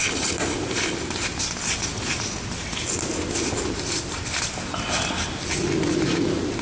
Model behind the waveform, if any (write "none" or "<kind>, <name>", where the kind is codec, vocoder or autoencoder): none